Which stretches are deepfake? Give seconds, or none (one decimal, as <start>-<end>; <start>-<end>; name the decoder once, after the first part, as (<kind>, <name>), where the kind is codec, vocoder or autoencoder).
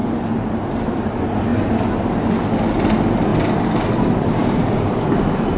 0.0-0.5 (vocoder, BigVGAN v2); 4.4-5.1